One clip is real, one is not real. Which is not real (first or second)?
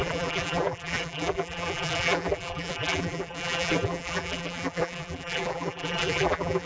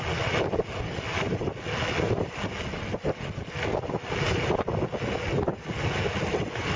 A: first